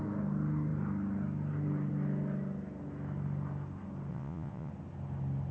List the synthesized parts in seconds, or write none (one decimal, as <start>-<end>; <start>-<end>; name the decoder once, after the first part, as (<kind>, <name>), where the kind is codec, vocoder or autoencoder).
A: 4.1-4.7 (vocoder, Vocos)